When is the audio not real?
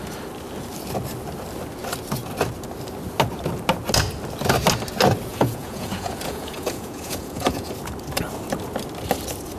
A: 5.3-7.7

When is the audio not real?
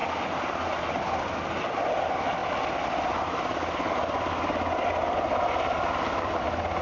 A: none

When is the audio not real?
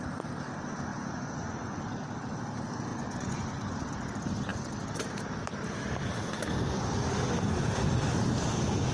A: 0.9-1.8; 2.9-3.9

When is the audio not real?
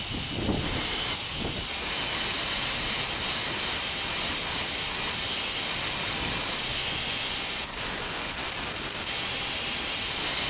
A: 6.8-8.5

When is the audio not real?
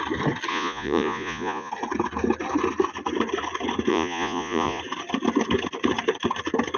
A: 0.5-1.7; 3.9-4.8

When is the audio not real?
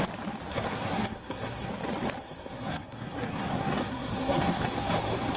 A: 0.5-1.7; 2.2-4.6